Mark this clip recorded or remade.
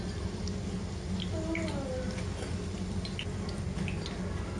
recorded